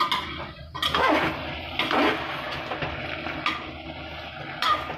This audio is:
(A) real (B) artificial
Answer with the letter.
A